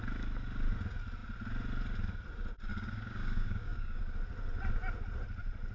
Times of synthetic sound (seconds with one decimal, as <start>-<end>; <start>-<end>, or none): 2.7-4.0